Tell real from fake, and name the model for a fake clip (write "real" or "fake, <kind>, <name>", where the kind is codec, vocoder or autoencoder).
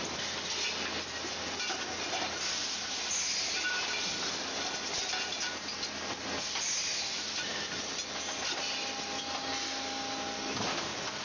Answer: real